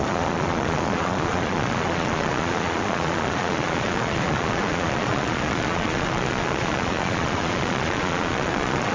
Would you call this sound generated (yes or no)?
yes